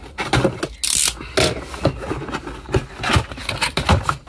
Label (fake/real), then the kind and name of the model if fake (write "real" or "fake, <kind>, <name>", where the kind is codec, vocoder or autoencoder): real